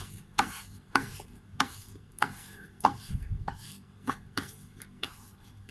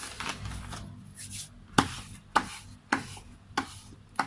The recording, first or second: second